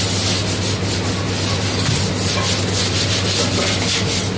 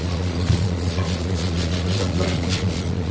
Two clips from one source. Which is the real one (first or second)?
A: first